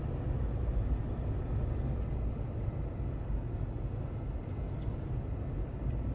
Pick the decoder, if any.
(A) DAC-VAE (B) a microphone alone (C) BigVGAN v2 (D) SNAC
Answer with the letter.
B